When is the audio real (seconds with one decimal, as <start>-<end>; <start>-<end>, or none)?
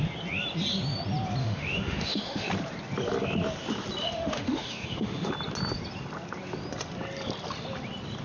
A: 0.0-1.4; 2.5-4.0; 5.3-8.2